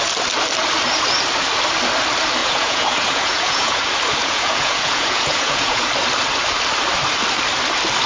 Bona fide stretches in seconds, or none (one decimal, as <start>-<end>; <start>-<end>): 0.0-2.4; 3.8-4.2; 5.9-8.1